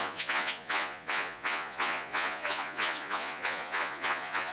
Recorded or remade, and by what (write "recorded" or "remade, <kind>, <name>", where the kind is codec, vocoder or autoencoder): remade, vocoder, Vocos